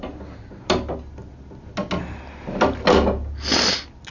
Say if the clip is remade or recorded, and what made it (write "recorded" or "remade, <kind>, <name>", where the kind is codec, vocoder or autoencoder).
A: recorded